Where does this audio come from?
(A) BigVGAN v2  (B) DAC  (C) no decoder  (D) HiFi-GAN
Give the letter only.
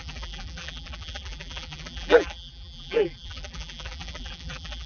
A